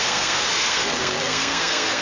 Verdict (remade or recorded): remade